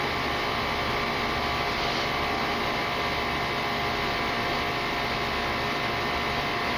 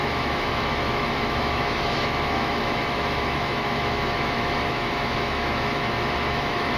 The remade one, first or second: second